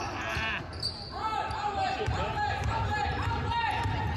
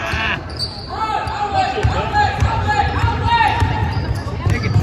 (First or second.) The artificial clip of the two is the second